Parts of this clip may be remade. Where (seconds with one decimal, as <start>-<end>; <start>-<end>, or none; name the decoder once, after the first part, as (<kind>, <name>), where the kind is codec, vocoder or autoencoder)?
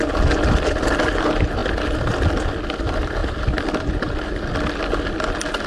none